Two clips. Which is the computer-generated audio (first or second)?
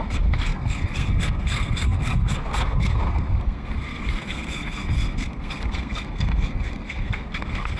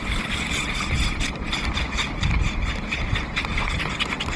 first